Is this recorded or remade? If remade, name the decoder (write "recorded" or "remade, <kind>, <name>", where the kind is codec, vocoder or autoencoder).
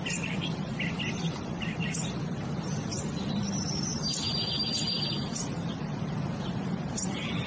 remade, vocoder, BigVGAN v2